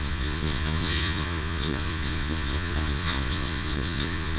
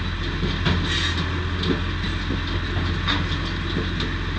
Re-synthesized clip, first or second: first